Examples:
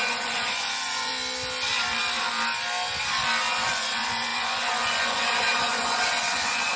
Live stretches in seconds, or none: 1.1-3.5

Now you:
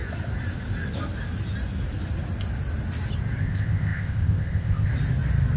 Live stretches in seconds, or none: 0.0-3.4; 4.9-5.6

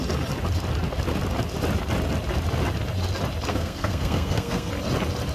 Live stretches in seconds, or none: 0.0-3.5; 4.7-5.3

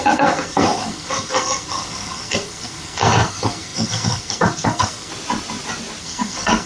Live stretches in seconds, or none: 5.1-6.0

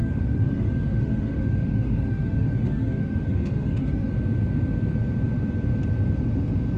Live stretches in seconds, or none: 4.1-6.8